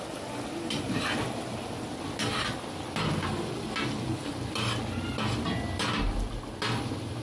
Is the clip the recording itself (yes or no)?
yes